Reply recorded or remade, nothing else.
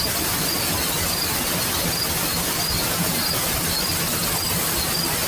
recorded